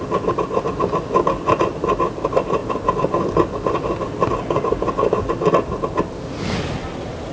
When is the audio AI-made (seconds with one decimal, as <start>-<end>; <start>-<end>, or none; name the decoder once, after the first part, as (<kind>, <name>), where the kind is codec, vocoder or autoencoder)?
none